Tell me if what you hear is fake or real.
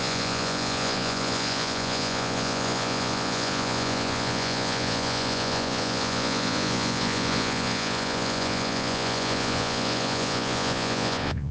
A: fake